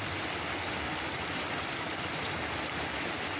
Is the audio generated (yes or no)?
no